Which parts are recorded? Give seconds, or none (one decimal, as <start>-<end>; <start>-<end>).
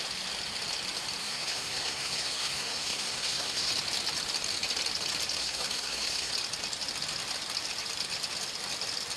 0.0-1.2; 3.7-5.4; 6.3-9.2